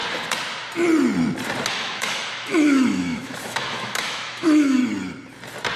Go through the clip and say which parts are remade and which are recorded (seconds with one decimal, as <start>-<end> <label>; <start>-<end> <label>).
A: 0.0-1.7 recorded; 1.7-4.8 remade; 4.8-5.8 recorded

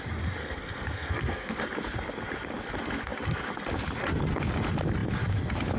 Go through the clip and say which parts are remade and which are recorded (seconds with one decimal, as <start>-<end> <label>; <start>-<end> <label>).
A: 0.0-0.4 recorded; 0.4-1.6 remade; 1.6-5.8 recorded